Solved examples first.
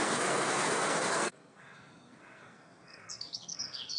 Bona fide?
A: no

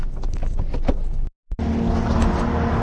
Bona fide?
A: yes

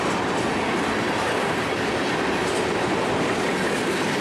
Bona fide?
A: yes